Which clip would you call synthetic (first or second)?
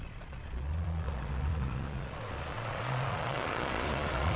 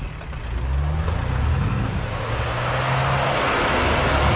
first